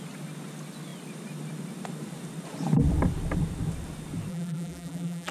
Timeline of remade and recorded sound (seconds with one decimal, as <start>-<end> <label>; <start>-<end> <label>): 0.0-4.3 recorded; 4.3-5.3 remade